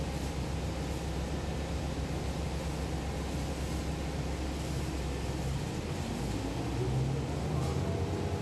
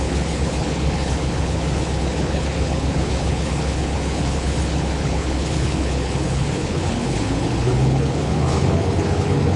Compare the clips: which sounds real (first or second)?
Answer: first